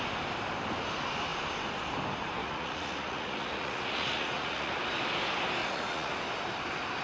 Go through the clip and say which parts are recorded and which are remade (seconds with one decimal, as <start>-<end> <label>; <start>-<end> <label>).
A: 0.0-2.4 recorded; 2.4-4.7 remade; 4.7-5.6 recorded; 5.6-6.1 remade; 6.1-7.0 recorded